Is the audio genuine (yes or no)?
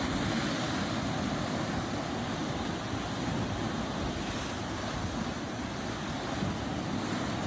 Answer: yes